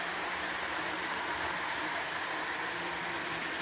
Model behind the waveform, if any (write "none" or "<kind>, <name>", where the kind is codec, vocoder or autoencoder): none